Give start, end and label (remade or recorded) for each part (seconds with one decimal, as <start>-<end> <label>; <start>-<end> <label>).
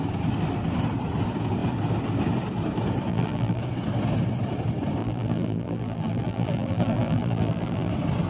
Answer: 0.0-3.1 recorded; 3.1-3.6 remade; 3.6-5.0 recorded; 5.0-7.9 remade; 7.9-8.3 recorded